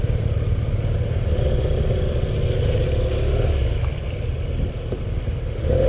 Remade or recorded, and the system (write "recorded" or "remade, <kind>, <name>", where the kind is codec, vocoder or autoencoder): recorded